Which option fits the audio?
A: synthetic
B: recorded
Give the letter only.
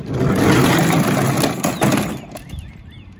B